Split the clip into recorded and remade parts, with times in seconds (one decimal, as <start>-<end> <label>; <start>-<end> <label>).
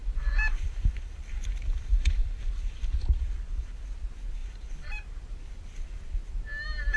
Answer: 0.0-3.8 remade; 3.8-4.4 recorded; 4.4-5.2 remade; 5.2-7.0 recorded